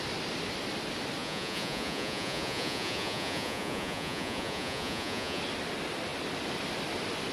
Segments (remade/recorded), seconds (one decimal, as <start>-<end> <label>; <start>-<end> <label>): 0.0-1.2 recorded; 1.2-5.4 remade; 5.4-7.3 recorded